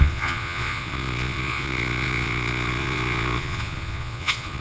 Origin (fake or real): fake